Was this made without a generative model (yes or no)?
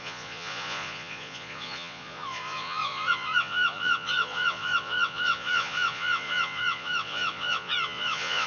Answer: no